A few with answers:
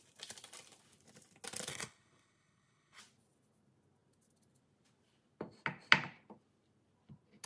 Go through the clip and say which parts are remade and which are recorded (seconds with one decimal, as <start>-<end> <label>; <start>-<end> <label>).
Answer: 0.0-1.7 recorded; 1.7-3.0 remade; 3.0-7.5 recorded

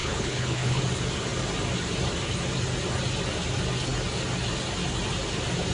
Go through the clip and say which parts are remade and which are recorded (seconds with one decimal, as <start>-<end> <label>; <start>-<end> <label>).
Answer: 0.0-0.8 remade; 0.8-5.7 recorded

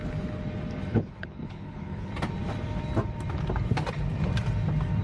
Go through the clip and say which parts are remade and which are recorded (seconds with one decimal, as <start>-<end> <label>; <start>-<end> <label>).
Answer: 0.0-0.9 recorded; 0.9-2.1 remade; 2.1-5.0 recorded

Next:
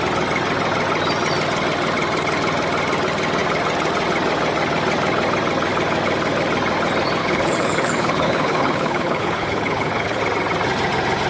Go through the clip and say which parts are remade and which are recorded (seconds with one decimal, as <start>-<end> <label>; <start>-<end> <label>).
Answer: 0.0-7.2 recorded; 7.2-10.2 remade; 10.2-11.3 recorded

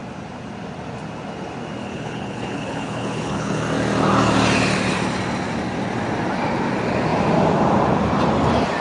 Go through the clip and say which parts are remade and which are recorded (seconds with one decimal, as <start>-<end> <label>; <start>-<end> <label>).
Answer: 0.0-1.8 recorded; 1.8-3.6 remade; 3.6-8.8 recorded

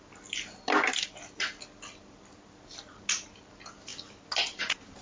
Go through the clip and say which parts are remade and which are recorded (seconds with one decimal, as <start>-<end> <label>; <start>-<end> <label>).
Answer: 0.0-5.0 recorded

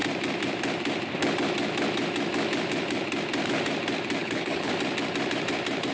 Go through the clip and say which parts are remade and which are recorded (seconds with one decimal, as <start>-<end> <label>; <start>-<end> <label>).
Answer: 0.0-4.2 recorded; 4.2-4.7 remade; 4.7-5.9 recorded